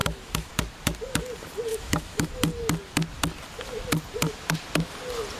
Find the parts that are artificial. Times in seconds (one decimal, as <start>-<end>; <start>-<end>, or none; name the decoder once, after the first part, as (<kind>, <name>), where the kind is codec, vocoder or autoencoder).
0.0-0.5 (autoencoder, DAC-VAE); 1.7-2.3